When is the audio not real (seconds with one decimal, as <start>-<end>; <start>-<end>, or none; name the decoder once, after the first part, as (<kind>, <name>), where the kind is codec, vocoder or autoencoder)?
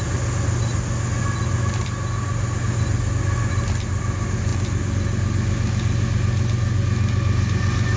none